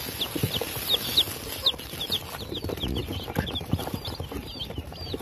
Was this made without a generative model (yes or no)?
yes